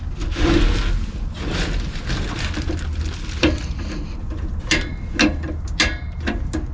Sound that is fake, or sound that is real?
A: real